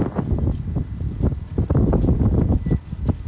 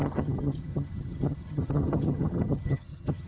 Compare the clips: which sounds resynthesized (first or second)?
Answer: second